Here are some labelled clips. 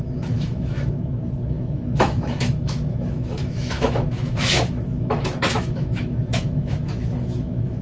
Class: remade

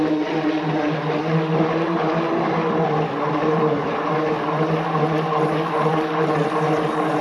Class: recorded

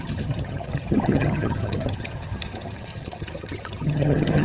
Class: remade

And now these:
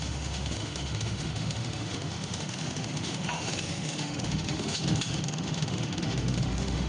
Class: remade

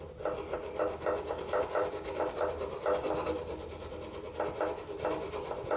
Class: recorded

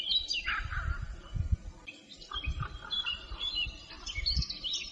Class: recorded